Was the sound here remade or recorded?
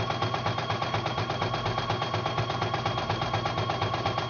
recorded